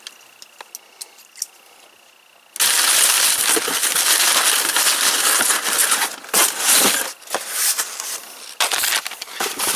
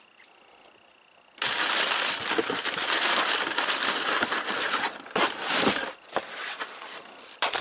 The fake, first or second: second